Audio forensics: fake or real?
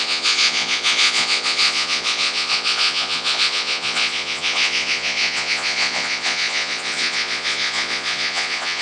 fake